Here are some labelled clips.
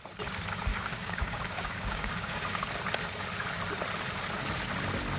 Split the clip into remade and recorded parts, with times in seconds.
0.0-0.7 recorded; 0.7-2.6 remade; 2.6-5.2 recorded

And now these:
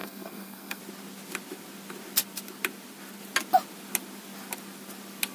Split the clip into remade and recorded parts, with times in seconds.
0.0-0.8 remade; 0.8-5.3 recorded

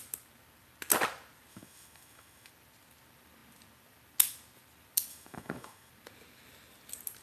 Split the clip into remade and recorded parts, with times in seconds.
0.0-1.5 recorded; 1.5-2.5 remade; 2.5-5.1 recorded; 5.1-5.9 remade; 5.9-7.2 recorded